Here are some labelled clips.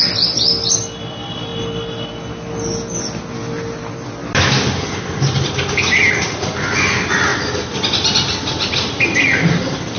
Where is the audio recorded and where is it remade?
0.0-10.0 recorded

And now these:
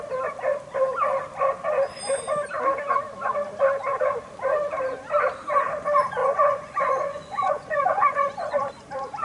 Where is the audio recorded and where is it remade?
0.0-6.2 recorded; 6.2-8.7 remade; 8.7-9.2 recorded

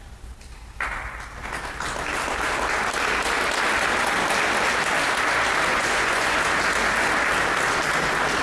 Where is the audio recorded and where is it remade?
0.0-5.7 recorded; 5.7-6.4 remade; 6.4-8.4 recorded

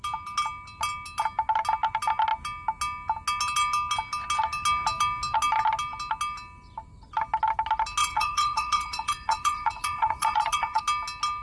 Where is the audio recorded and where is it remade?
0.0-8.0 recorded; 8.0-10.8 remade; 10.8-11.4 recorded